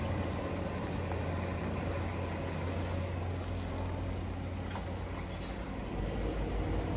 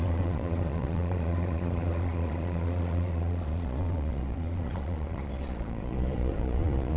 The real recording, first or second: first